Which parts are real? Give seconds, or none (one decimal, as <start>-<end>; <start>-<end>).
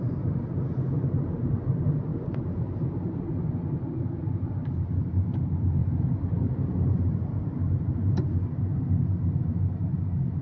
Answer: 0.0-2.1; 3.2-5.8; 7.2-10.4